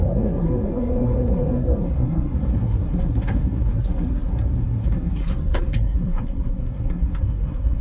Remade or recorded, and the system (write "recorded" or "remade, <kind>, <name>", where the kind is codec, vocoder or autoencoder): remade, codec, SNAC